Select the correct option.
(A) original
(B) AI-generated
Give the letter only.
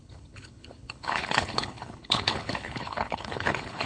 B